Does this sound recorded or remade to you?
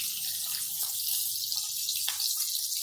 recorded